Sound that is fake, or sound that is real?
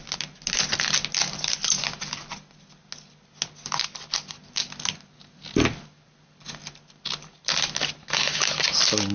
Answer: real